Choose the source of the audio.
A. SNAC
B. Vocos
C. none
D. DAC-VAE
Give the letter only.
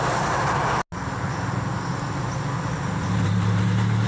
C